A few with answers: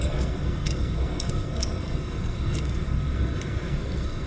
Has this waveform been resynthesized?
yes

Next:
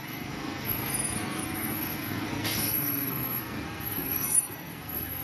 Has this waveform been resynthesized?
yes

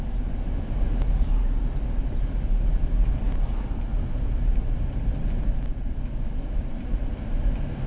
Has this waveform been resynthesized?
no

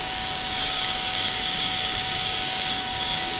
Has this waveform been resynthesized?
yes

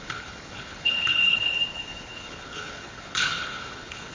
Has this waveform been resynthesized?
yes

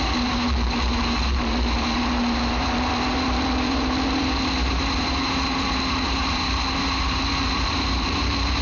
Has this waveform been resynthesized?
yes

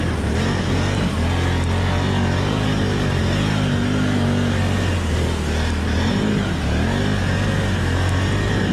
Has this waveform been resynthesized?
no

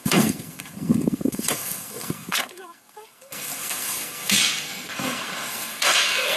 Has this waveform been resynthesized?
yes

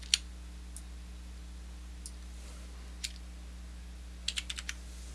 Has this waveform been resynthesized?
no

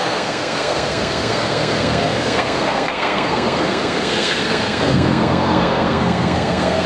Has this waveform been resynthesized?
yes